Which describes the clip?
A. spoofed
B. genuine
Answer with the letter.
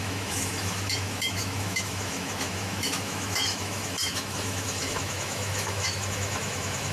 A